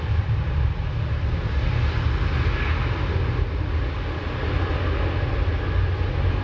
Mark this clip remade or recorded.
recorded